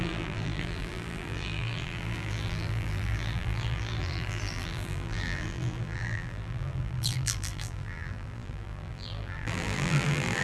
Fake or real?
fake